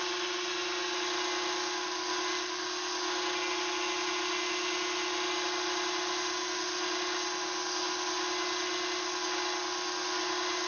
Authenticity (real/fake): real